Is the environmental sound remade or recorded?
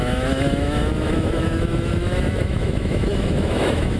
remade